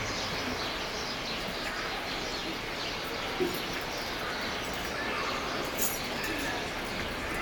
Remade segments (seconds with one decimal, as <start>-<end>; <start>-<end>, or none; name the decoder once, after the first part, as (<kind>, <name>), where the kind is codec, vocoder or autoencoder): none